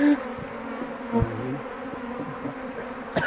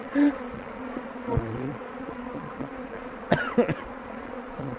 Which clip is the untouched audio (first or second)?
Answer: first